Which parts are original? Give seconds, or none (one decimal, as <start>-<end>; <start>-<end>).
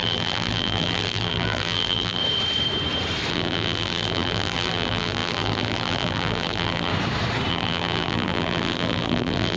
2.2-3.3; 6.9-7.5